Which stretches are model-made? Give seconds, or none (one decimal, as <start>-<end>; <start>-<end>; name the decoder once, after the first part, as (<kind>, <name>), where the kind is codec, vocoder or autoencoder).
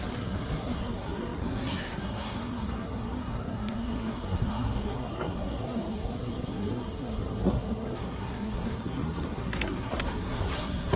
0.0-11.0 (codec, SNAC)